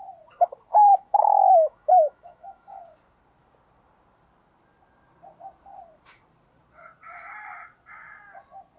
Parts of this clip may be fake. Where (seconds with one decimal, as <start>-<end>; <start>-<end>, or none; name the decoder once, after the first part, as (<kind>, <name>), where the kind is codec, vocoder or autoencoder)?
0.9-2.8 (autoencoder, DAC-VAE)